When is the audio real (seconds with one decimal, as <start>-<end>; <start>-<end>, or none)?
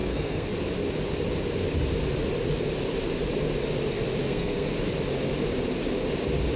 0.5-4.2; 4.7-6.6